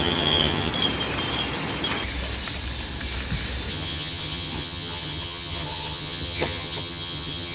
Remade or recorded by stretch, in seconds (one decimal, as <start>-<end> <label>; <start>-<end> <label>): 0.0-0.7 remade; 0.7-3.7 recorded; 3.7-7.5 remade